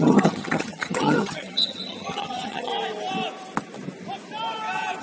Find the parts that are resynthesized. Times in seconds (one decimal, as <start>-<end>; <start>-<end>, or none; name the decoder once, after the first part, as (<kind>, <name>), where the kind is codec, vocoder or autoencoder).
0.0-2.7 (vocoder, HiFi-GAN)